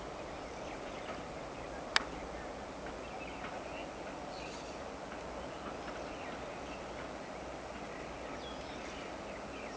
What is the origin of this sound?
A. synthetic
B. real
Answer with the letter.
B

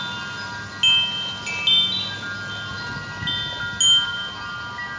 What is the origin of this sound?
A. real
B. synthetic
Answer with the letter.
A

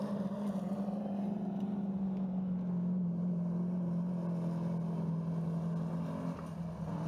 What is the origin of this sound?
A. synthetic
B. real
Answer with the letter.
B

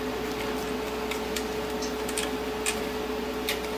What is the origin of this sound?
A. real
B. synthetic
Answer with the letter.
A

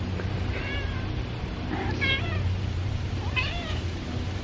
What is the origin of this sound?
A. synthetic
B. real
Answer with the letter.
A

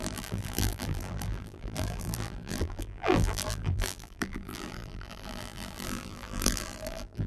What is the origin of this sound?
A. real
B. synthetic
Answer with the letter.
B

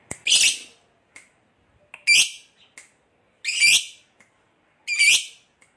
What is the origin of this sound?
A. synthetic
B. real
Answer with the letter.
B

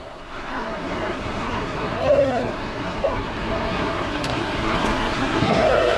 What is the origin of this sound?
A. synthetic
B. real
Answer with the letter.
A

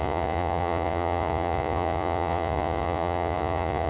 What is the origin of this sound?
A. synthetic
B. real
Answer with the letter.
A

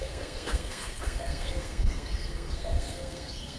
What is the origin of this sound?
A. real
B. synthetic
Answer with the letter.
B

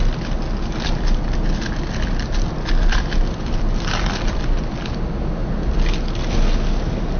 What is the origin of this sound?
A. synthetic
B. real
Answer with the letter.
B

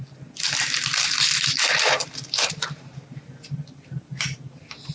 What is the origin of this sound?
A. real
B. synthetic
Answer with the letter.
A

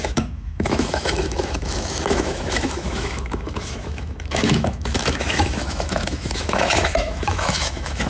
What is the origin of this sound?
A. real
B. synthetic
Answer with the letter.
B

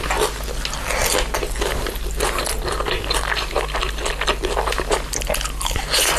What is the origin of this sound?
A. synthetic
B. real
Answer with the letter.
B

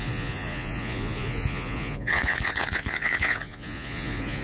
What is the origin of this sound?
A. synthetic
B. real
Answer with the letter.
A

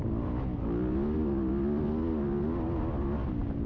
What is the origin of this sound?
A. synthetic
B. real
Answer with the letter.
B